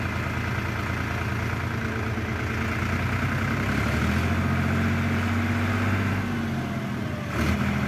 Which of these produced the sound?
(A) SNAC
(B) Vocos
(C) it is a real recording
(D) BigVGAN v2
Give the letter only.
C